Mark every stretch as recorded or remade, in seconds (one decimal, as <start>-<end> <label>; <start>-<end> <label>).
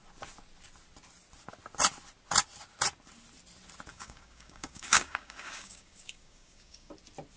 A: 0.0-3.9 recorded; 3.9-6.9 remade; 6.9-7.4 recorded